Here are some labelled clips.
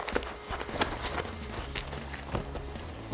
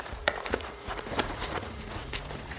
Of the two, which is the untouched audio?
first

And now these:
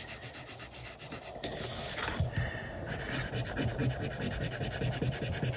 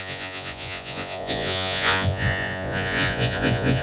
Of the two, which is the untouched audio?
first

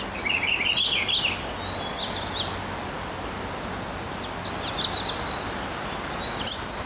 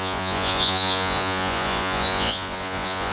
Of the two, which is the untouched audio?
first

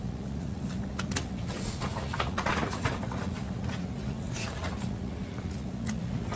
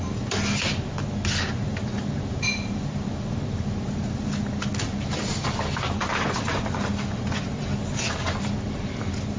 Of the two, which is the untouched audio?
second